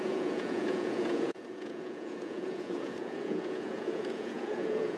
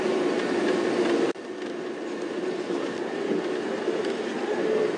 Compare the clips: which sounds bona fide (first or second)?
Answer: second